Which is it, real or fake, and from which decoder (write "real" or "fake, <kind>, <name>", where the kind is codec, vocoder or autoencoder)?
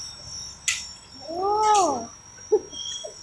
real